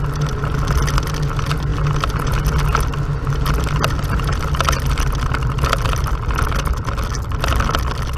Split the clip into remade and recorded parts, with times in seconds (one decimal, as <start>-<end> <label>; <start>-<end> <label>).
0.0-8.2 recorded